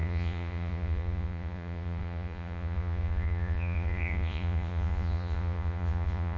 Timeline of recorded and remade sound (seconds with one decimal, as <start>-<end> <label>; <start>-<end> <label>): 0.0-6.4 remade